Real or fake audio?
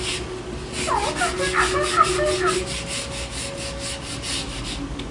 real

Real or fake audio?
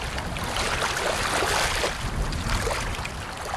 real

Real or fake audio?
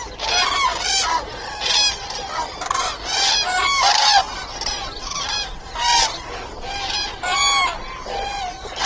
real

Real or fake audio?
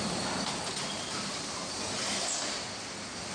real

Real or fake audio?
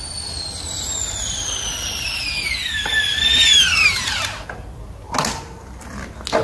real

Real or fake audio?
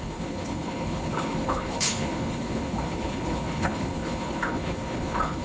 fake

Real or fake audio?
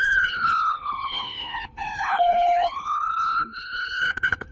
fake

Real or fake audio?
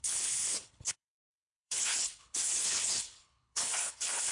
fake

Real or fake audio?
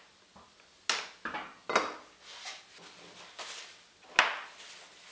real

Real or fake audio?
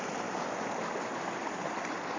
real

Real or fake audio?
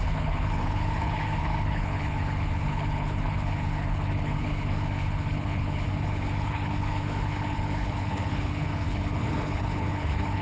fake